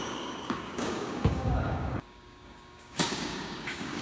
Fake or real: fake